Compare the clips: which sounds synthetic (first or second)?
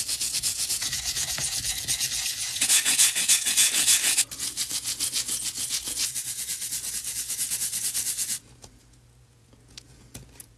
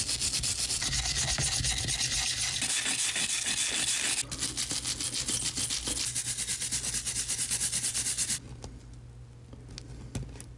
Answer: first